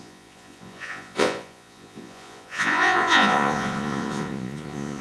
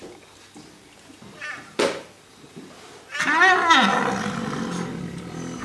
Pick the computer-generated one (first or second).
first